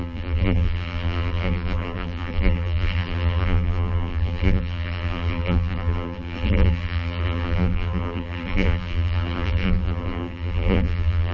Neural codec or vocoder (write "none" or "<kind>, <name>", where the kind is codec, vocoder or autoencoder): vocoder, BigVGAN v2